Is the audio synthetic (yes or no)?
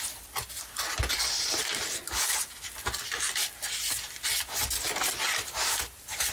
no